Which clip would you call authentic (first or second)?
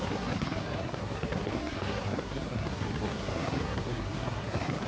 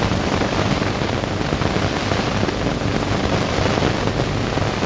second